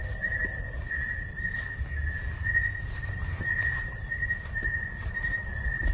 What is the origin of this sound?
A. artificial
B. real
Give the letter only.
B